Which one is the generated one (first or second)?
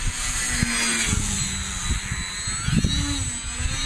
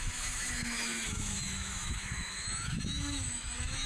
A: second